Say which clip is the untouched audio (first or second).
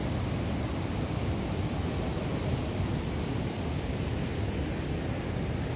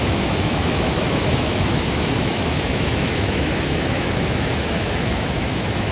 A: first